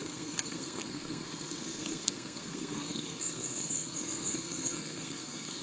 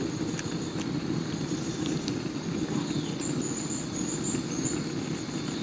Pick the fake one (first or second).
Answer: first